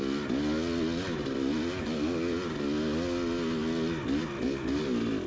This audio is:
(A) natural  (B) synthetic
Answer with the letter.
A